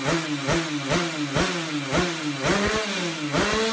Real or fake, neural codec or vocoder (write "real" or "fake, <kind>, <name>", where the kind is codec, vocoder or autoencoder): real